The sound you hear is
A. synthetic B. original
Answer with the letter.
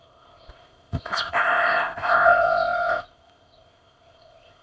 A